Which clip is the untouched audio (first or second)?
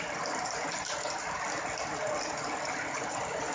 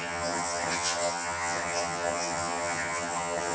first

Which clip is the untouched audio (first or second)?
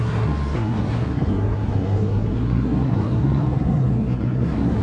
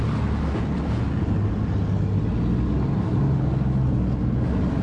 second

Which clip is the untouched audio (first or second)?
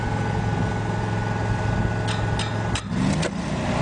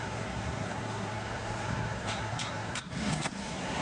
first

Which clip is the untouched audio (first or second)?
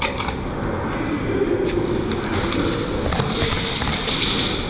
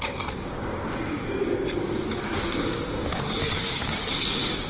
first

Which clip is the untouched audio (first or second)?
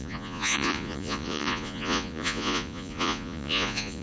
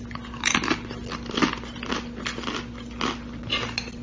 second